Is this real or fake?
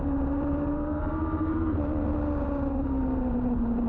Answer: fake